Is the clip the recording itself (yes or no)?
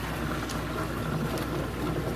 yes